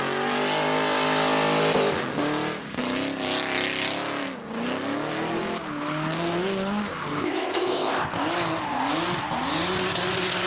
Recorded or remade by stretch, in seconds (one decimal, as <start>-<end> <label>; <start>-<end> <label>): 0.0-7.2 recorded; 7.2-8.1 remade; 8.1-10.5 recorded